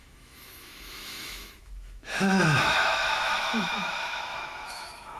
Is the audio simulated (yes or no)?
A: yes